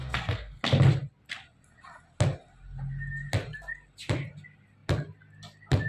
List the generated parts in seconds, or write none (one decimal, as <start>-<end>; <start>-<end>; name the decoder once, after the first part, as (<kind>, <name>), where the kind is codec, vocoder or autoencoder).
0.0-0.6 (codec, SNAC)